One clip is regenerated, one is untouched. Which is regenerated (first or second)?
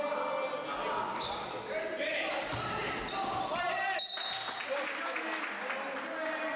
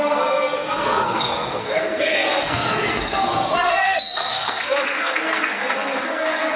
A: second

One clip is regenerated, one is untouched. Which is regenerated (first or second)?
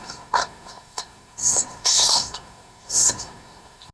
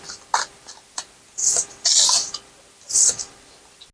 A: first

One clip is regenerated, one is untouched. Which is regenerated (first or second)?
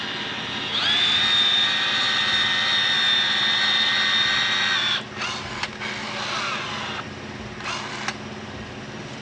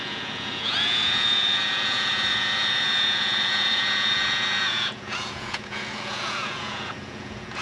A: second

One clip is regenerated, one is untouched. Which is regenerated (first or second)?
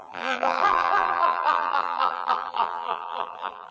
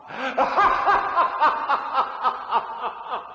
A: first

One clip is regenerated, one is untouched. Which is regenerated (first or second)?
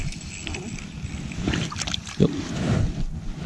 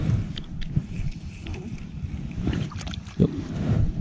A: second